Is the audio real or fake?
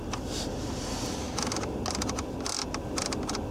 real